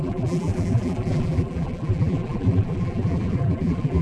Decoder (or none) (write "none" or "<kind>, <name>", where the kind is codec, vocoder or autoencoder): vocoder, BigVGAN v2